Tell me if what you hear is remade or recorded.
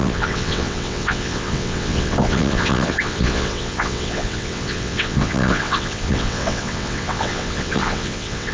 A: remade